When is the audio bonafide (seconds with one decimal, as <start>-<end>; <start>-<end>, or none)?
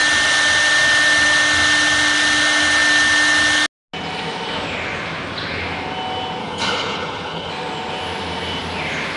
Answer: 0.0-6.4; 7.5-9.2